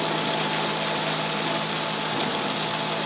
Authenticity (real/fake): real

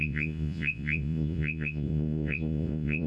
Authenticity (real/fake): fake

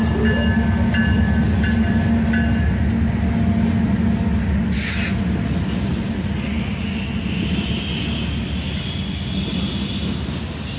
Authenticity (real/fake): real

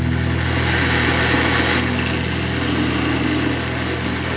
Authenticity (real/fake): real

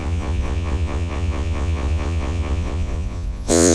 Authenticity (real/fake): fake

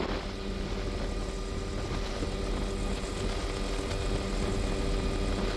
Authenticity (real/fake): real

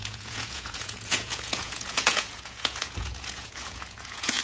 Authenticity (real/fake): fake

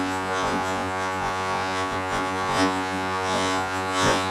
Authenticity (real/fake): fake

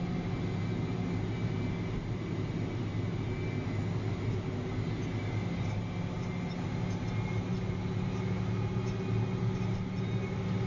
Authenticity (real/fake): real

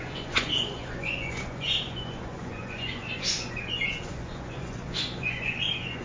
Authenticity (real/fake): fake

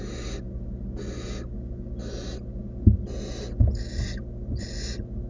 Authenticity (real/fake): real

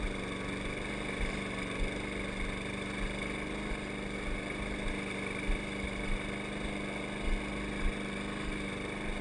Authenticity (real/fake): real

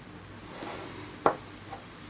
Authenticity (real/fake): real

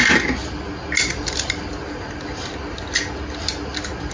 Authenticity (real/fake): real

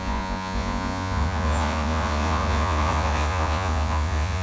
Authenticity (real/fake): fake